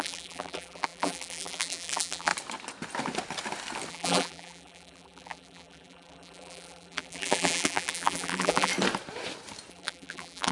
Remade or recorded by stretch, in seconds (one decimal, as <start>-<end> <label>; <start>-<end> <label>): 0.0-2.3 remade; 2.3-3.9 recorded; 3.9-8.7 remade; 8.7-9.7 recorded; 9.7-10.5 remade